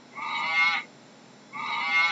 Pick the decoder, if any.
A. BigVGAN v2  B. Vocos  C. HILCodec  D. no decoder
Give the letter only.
D